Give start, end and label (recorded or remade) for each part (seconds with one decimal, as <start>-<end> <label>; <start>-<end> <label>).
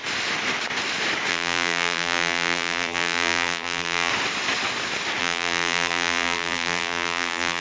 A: 0.0-1.3 recorded; 1.3-4.1 remade; 4.1-5.2 recorded; 5.2-7.6 remade